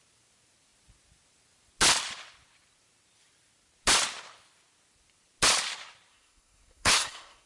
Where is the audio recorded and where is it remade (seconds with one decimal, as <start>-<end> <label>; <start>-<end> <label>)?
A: 0.0-6.1 recorded; 6.1-7.5 remade